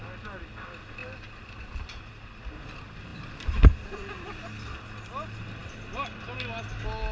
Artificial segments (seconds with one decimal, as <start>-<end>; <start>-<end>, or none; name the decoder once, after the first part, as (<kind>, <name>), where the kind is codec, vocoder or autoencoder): 1.0-2.4 (vocoder, BigVGAN v2); 3.1-4.4